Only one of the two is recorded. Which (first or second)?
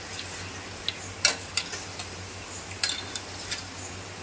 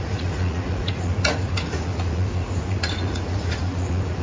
first